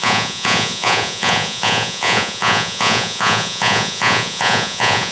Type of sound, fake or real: fake